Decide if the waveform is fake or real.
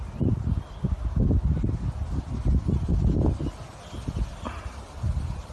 real